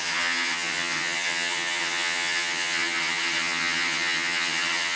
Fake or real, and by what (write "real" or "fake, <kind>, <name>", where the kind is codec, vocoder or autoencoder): fake, vocoder, HiFi-GAN